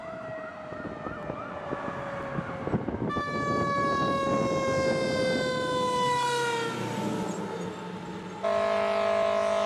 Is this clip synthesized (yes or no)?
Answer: no